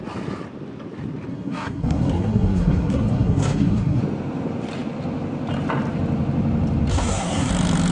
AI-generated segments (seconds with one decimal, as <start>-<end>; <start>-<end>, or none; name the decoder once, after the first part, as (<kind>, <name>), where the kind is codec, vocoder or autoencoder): 1.3-4.0 (codec, SNAC); 6.9-7.5